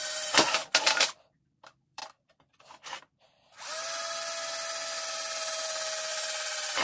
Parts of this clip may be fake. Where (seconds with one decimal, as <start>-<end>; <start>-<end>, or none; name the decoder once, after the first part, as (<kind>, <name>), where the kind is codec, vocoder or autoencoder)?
1.0-2.0 (vocoder, BigVGAN v2); 6.1-6.8